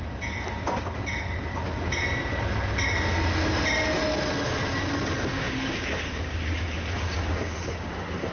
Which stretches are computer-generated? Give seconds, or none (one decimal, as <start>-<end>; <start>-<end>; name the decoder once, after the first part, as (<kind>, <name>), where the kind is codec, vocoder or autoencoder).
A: 5.3-7.9 (codec, DAC)